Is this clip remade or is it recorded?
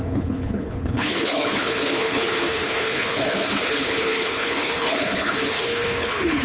remade